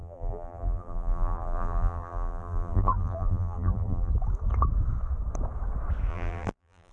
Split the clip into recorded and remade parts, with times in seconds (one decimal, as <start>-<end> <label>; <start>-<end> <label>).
0.0-4.1 remade; 4.1-6.1 recorded; 6.1-6.9 remade